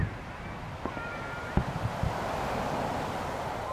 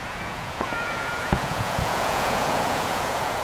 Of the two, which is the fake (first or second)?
second